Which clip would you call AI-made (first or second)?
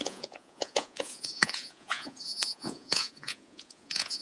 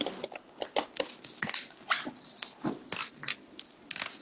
first